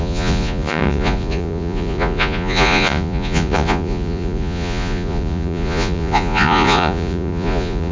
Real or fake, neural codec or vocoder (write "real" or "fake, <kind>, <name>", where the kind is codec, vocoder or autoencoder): fake, vocoder, Vocos